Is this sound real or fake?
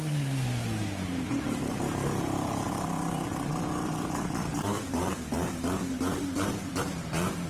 fake